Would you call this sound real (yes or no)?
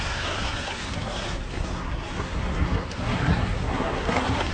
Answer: no